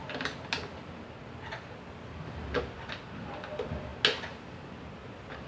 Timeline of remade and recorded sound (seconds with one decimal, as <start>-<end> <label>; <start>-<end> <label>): 0.0-5.5 recorded